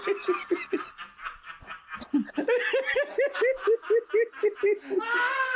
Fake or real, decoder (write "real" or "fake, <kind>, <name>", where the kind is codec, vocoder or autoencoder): real